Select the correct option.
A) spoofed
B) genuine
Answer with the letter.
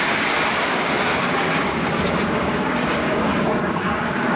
A